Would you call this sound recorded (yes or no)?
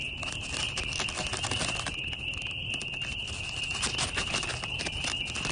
yes